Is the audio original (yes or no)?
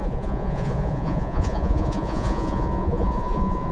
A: no